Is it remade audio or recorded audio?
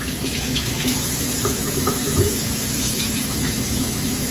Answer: remade